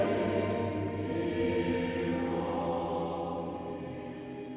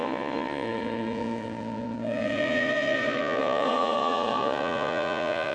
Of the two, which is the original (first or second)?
first